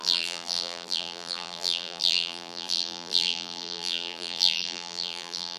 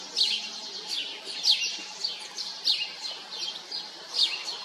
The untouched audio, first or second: second